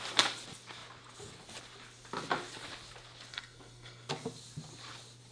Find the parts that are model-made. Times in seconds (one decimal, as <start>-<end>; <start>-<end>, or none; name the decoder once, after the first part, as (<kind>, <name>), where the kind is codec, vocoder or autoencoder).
3.3-4.1 (codec, SNAC)